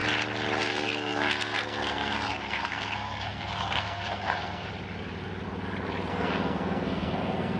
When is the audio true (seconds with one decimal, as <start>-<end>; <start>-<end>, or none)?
0.0-0.6; 4.7-6.1